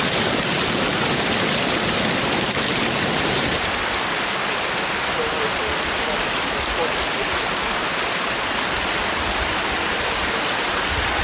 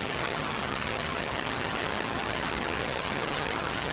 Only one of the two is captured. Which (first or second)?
first